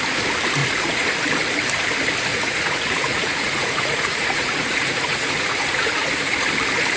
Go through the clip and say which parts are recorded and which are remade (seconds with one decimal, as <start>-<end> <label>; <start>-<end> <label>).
0.0-0.6 recorded; 0.6-1.2 remade; 1.2-2.3 recorded; 2.3-6.5 remade; 6.5-7.0 recorded